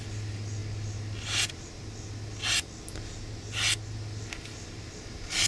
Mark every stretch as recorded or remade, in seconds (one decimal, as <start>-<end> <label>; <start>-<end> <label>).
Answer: 0.0-5.5 recorded